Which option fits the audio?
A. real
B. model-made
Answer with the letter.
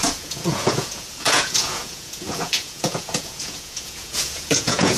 B